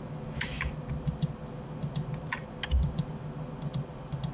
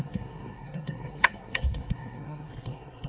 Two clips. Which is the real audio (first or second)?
first